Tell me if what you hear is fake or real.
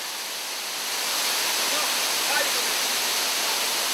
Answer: real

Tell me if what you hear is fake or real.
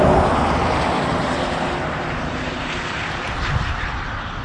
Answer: real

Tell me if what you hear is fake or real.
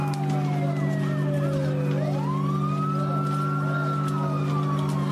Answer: real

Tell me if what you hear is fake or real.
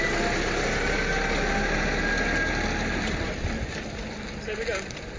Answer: real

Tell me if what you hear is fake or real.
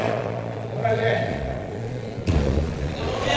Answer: fake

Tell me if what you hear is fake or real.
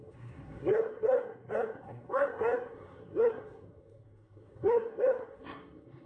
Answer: fake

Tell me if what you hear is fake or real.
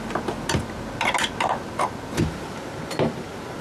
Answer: real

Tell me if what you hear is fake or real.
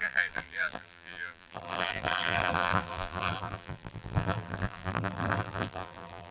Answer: fake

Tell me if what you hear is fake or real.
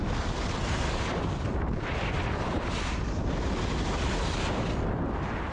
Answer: real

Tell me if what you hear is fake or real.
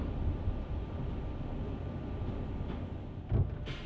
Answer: real